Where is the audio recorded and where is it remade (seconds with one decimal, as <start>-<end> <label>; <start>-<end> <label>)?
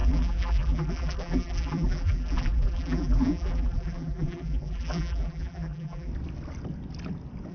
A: 0.0-6.1 remade; 6.1-7.5 recorded